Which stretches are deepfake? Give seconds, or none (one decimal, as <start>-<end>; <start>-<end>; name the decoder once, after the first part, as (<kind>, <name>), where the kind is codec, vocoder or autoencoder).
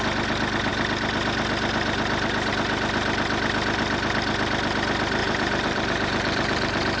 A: 5.2-7.0 (vocoder, BigVGAN v2)